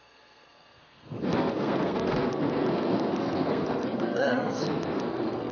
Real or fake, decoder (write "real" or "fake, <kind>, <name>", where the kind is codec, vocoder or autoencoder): fake, codec, SNAC